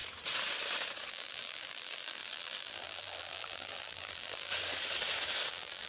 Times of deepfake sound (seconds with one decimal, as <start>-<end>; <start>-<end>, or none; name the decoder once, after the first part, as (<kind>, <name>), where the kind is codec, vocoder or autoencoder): 1.1-4.5 (vocoder, BigVGAN v2); 5.5-5.9